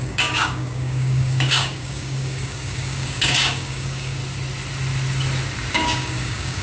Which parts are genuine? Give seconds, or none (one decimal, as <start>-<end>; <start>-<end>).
4.2-5.7